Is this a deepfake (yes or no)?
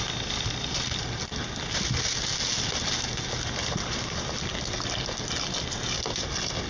no